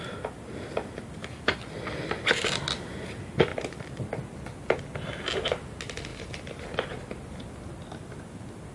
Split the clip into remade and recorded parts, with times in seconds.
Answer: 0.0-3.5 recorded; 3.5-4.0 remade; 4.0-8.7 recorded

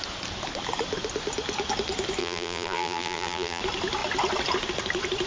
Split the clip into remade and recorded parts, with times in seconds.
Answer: 0.0-2.2 recorded; 2.2-3.6 remade; 3.6-5.3 recorded

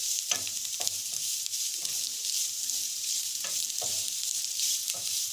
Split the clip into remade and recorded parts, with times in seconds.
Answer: 0.0-5.3 remade

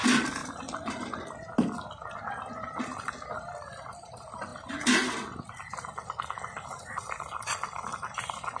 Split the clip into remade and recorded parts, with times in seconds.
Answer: 0.0-8.6 recorded